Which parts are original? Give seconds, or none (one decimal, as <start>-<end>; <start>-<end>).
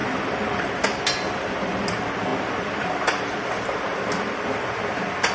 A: 0.7-2.3; 4.2-5.3